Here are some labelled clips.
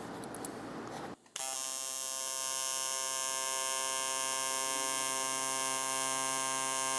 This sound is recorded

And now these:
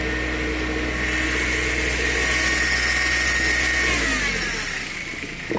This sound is recorded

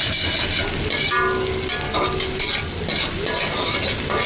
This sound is recorded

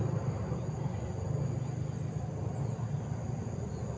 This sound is recorded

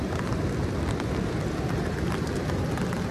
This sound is remade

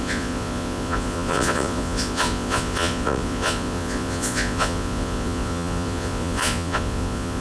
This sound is remade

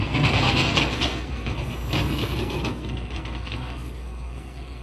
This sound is remade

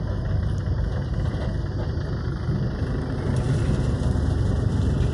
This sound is recorded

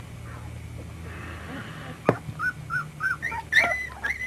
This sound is recorded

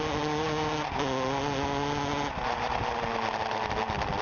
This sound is recorded